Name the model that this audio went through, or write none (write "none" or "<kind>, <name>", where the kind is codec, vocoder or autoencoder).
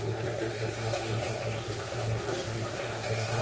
codec, SNAC